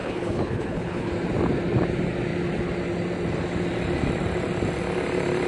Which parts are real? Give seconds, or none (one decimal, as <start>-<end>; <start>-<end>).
1.1-5.5